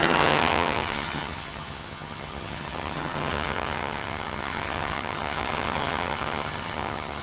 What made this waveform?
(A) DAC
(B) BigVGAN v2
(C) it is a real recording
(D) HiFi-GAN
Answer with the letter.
D